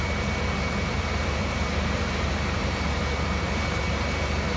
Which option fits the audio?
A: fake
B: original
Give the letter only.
B